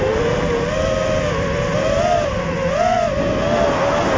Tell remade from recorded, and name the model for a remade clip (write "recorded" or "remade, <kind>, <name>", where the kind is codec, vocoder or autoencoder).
recorded